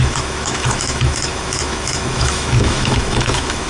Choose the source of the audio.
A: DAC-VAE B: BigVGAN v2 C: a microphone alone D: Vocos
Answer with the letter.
A